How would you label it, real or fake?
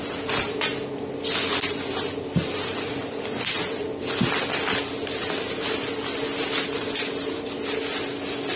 real